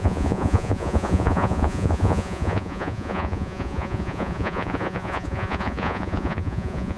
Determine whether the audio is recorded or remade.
remade